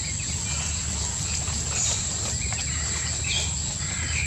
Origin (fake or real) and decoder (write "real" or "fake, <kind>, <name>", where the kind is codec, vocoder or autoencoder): real